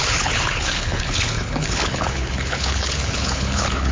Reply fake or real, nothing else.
fake